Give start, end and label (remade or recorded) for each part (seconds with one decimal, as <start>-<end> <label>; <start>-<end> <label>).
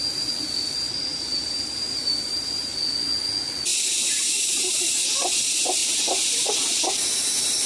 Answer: 0.0-1.1 recorded; 1.1-2.8 remade; 2.8-5.8 recorded; 5.8-7.1 remade; 7.1-7.7 recorded